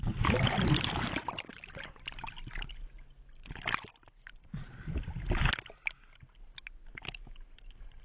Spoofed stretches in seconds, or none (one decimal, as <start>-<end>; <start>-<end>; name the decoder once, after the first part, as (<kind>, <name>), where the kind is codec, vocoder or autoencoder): none